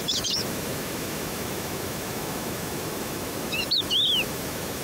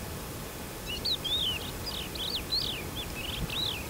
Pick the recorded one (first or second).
second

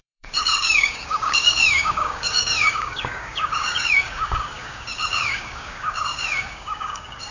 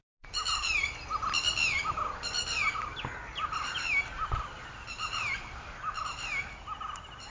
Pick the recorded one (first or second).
second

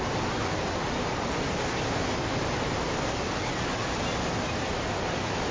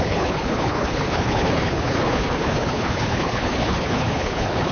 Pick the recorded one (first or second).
first